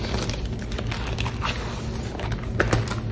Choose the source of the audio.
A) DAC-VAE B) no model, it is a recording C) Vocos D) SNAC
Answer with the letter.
B